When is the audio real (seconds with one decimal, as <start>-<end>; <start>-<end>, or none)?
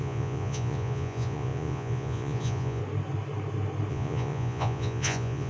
2.8-3.9